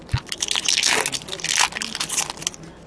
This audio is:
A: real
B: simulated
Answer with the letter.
A